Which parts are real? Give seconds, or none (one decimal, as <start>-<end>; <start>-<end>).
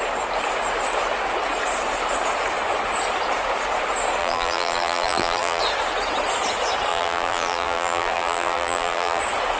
0.0-4.2; 5.6-6.9; 9.2-9.6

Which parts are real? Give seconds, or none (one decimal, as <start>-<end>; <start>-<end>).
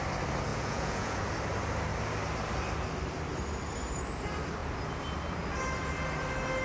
0.0-0.5; 1.2-6.6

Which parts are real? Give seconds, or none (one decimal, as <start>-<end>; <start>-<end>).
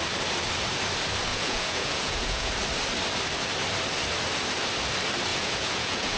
0.0-1.3; 2.5-5.3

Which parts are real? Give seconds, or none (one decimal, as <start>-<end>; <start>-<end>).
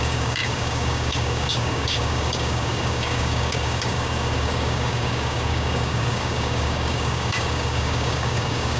none